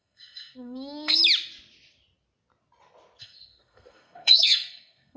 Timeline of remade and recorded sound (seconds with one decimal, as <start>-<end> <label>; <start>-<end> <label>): 0.0-1.2 remade; 1.2-3.2 recorded; 3.2-5.2 remade